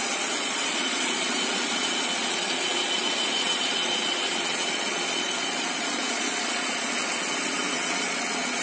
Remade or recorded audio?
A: remade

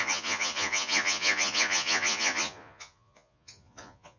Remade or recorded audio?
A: remade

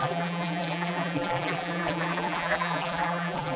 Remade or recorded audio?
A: remade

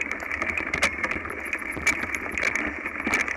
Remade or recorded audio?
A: recorded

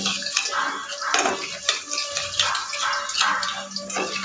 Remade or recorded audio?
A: recorded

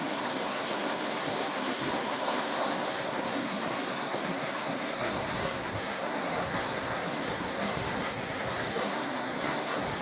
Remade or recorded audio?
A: remade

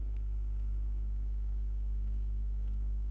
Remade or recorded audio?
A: remade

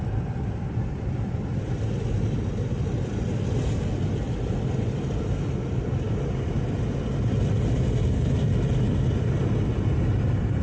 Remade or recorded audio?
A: recorded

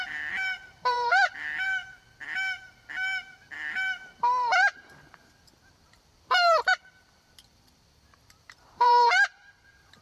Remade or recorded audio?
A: remade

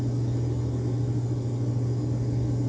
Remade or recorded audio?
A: recorded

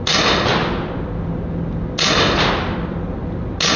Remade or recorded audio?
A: recorded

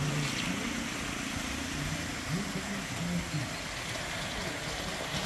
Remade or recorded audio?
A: recorded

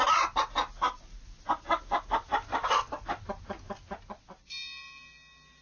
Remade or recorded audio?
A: recorded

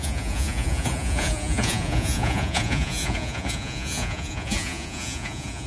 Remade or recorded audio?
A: remade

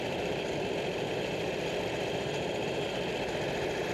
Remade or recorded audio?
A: recorded